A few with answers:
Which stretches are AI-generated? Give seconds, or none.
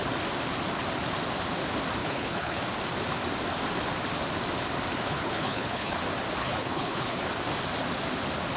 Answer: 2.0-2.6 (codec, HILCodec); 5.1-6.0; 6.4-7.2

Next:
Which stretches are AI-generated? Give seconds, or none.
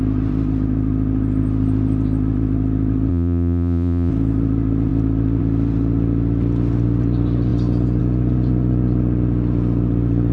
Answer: 3.1-4.1 (vocoder, Vocos)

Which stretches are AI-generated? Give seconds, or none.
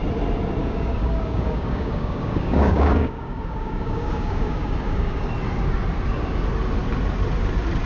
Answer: 0.6-5.3 (codec, DAC)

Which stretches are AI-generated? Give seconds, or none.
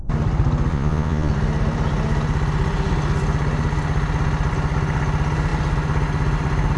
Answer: 0.7-1.3 (vocoder, Vocos)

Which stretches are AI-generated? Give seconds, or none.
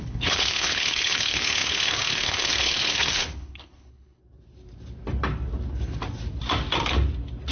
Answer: 0.0-4.2 (codec, HILCodec)